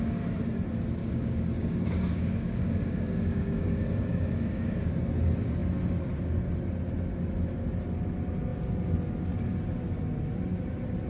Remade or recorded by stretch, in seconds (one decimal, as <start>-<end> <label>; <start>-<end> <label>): 0.0-1.0 recorded; 1.0-4.9 remade; 4.9-11.1 recorded